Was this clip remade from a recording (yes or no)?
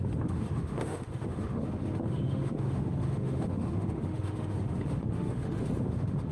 yes